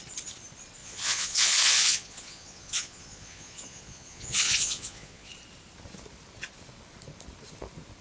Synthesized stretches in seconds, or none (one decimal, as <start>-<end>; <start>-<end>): 0.8-5.3